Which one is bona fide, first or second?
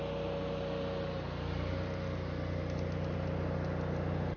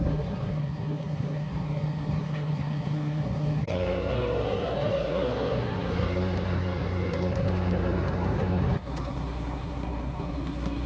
first